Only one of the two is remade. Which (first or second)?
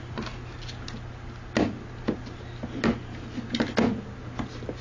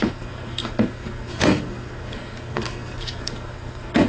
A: second